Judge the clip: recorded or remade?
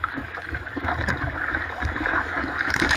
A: remade